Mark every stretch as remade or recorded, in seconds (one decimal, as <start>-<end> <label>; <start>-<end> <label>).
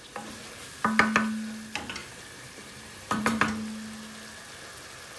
0.0-2.0 recorded; 2.0-3.4 remade; 3.4-5.2 recorded